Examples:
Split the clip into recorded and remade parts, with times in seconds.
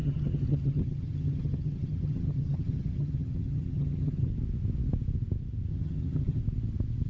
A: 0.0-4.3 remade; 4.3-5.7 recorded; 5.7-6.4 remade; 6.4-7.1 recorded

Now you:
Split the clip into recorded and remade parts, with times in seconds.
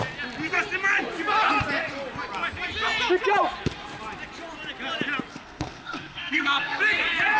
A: 0.0-5.3 recorded; 5.3-6.8 remade; 6.8-7.4 recorded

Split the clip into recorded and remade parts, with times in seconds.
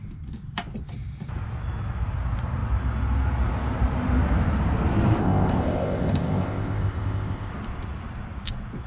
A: 0.0-5.2 recorded; 5.2-7.5 remade; 7.5-8.9 recorded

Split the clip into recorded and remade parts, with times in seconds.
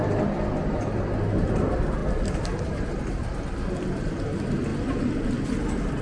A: 0.0-6.0 recorded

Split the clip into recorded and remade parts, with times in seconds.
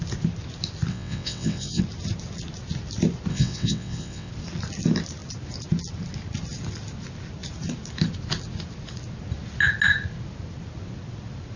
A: 0.0-0.9 recorded; 0.9-1.8 remade; 1.8-3.3 recorded; 3.3-4.3 remade; 4.3-11.6 recorded